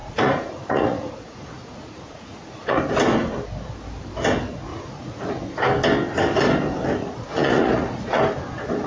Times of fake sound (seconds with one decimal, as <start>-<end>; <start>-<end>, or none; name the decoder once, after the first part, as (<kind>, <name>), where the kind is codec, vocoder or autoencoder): 0.0-2.8 (vocoder, Vocos); 4.7-5.3; 7.0-8.2